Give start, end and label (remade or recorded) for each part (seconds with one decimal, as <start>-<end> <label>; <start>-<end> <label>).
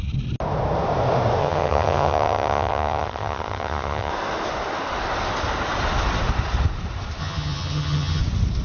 0.0-1.4 recorded; 1.4-4.1 remade; 4.1-7.2 recorded; 7.2-8.2 remade; 8.2-8.6 recorded